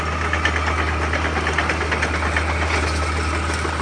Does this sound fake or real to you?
real